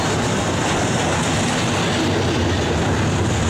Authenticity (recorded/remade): recorded